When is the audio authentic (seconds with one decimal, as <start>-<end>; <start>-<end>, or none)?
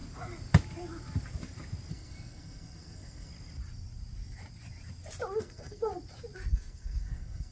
0.0-1.9; 3.3-5.4; 5.9-6.5